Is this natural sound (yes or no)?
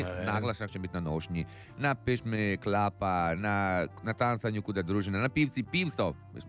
yes